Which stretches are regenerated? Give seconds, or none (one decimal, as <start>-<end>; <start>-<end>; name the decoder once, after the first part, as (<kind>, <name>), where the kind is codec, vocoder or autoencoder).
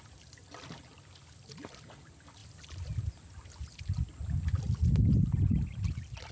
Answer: none